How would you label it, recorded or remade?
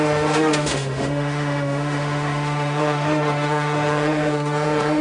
remade